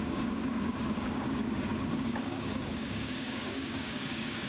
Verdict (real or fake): fake